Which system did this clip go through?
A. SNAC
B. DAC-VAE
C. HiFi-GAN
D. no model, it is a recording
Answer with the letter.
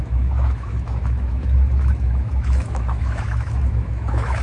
B